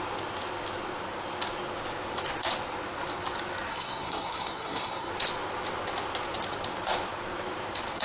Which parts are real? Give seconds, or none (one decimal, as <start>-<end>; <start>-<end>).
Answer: 0.0-3.7; 5.1-8.0